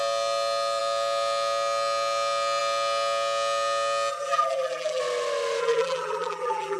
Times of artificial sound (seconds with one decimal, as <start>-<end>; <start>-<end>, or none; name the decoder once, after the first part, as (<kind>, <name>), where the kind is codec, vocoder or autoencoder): 4.1-5.0 (vocoder, BigVGAN v2); 5.6-6.8